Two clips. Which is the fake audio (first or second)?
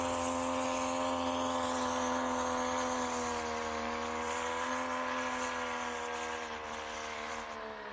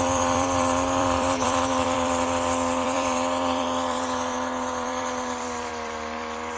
second